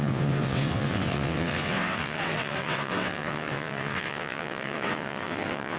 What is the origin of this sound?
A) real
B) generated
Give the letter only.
B